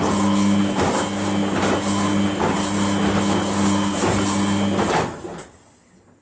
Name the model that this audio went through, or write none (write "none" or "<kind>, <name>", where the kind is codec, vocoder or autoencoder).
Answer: none